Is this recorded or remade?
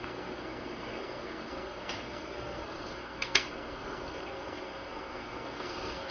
remade